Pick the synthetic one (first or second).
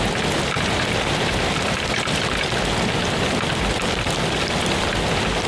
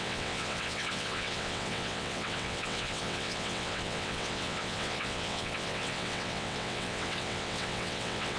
second